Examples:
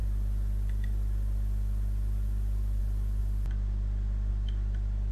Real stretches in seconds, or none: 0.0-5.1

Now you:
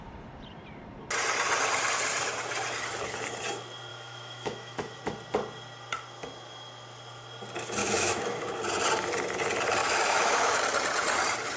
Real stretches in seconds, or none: 0.0-3.9; 5.0-7.8; 8.5-9.8; 10.6-11.6

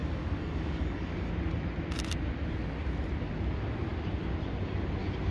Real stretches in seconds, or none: 1.3-5.3

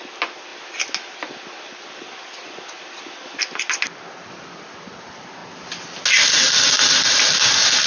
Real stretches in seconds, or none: 0.0-7.9

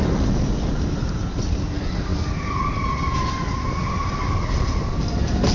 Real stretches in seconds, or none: 0.0-5.5